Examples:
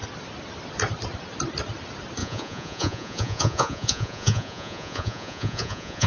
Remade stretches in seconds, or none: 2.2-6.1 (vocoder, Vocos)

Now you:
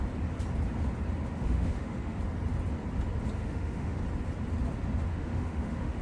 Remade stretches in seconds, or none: 1.2-2.2 (autoencoder, DAC-VAE); 3.4-4.0; 5.1-6.0